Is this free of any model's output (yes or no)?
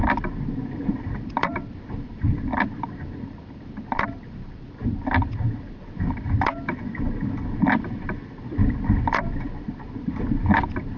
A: no